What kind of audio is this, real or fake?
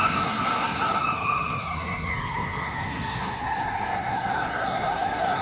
fake